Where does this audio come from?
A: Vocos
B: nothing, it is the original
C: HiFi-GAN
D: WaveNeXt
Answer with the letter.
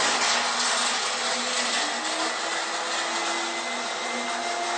B